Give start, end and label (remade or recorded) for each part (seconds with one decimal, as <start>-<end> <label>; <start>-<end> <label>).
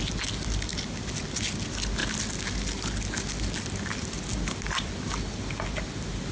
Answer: 0.0-6.3 recorded